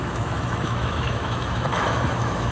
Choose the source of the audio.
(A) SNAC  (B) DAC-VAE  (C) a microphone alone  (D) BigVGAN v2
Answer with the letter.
B